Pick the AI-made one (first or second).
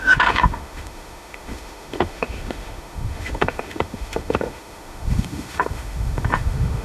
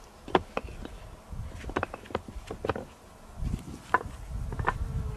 first